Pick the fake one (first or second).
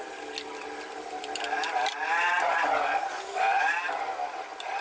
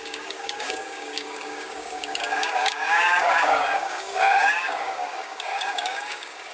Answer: second